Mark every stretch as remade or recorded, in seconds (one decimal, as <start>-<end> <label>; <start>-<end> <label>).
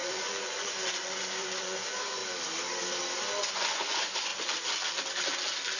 0.0-2.2 remade; 2.2-3.4 recorded; 3.4-4.3 remade; 4.3-5.8 recorded